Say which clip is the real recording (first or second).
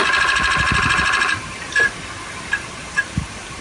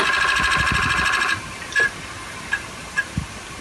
second